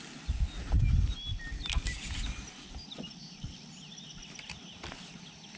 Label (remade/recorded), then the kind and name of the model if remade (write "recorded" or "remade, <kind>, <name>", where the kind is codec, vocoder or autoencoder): recorded